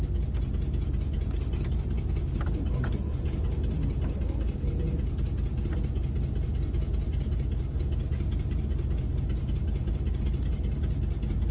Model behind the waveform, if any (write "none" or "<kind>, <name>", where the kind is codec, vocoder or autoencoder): none